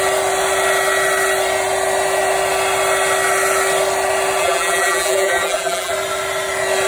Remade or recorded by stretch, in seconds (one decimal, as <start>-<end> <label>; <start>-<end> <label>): 0.0-4.4 recorded; 4.4-5.9 remade; 5.9-6.9 recorded